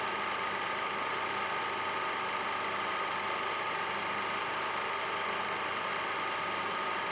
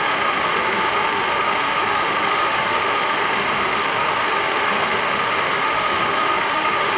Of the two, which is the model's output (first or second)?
second